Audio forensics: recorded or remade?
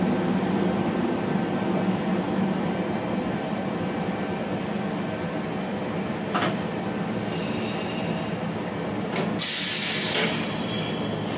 recorded